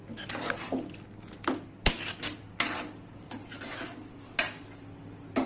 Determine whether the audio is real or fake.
real